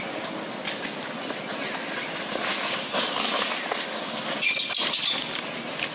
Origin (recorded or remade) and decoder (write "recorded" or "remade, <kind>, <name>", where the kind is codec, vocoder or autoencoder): recorded